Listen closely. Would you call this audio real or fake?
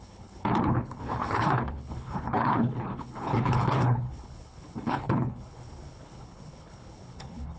fake